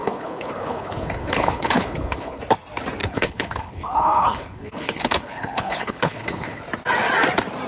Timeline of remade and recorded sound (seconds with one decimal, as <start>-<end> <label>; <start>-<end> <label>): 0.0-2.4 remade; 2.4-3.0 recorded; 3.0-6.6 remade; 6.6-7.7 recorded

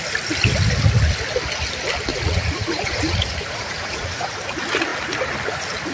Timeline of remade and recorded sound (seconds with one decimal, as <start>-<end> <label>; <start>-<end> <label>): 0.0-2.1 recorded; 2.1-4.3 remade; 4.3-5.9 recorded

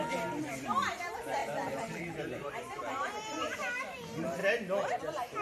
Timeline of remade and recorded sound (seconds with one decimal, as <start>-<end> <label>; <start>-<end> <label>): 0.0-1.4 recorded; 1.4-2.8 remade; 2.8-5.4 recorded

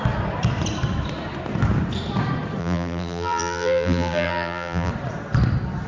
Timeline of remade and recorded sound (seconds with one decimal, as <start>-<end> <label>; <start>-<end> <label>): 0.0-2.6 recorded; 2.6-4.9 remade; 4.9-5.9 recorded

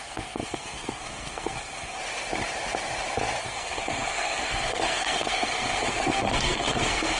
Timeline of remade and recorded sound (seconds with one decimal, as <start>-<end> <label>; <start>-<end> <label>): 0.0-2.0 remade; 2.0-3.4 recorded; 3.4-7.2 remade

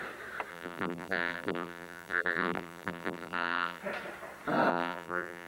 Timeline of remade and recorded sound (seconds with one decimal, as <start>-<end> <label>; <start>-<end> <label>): 0.0-0.5 recorded; 0.5-3.8 remade; 3.8-4.7 recorded; 4.7-5.5 remade